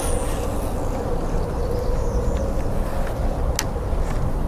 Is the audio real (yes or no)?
yes